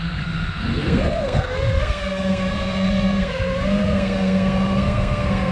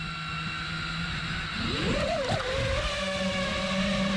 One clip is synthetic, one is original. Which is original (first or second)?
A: second